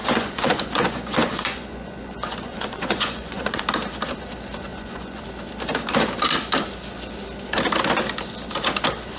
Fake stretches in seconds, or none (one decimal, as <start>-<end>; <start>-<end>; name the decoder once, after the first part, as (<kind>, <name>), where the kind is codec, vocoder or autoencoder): 0.0-3.6 (vocoder, Vocos); 4.7-5.2